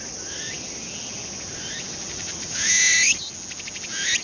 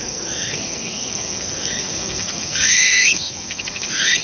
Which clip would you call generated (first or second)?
second